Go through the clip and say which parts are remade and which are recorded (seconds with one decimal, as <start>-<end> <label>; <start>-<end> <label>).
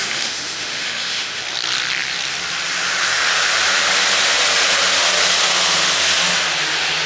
0.0-1.4 remade; 1.4-7.1 recorded